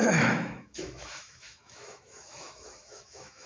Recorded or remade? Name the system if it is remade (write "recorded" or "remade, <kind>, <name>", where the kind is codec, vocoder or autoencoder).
remade, autoencoder, DAC-VAE